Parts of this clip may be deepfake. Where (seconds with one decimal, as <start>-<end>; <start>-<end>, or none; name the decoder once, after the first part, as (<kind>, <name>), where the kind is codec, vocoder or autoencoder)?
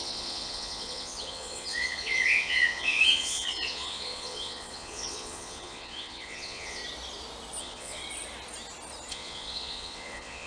0.0-6.8 (vocoder, Vocos); 7.6-8.0; 9.1-10.5